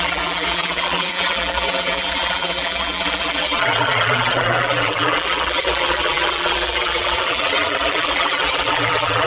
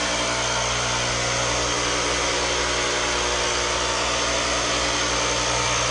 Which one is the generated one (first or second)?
first